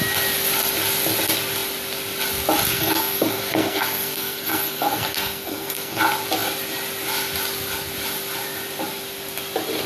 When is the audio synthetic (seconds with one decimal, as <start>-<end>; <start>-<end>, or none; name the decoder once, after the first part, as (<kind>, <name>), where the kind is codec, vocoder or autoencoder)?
2.7-6.0 (codec, SNAC)